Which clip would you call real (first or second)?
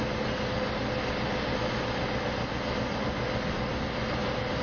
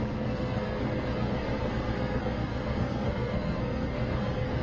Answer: first